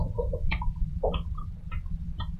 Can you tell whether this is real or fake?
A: fake